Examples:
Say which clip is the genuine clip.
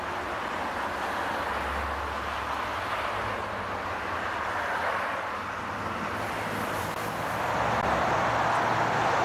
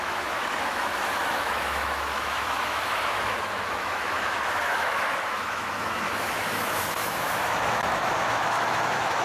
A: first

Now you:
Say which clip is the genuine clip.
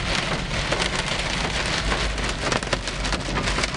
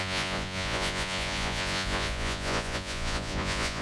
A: first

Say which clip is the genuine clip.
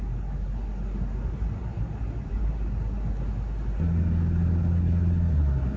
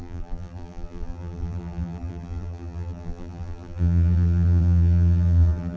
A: first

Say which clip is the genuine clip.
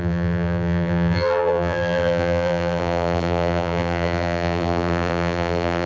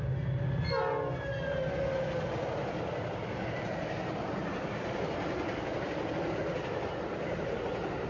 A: second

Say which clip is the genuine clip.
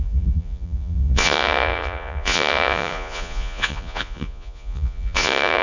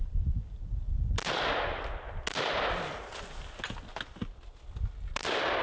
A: second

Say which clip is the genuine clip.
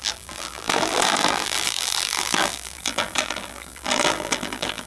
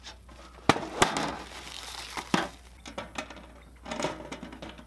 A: second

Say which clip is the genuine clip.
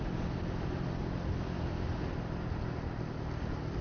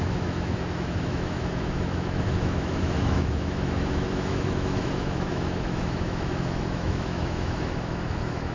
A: first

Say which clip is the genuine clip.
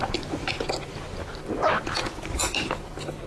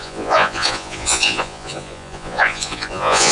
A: first